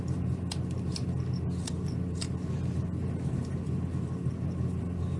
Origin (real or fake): real